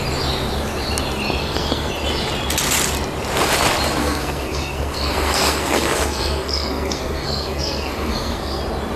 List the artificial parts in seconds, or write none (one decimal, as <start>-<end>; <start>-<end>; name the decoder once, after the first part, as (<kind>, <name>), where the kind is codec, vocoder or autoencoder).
1.4-1.9 (codec, SNAC); 4.0-8.6